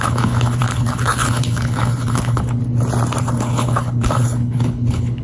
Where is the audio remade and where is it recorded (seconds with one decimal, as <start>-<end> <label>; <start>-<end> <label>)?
0.0-2.6 remade; 2.6-3.2 recorded; 3.2-5.2 remade